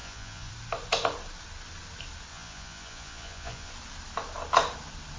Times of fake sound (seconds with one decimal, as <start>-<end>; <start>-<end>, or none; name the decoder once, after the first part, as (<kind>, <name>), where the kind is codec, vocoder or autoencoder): 0.0-0.5 (vocoder, Vocos); 2.3-3.7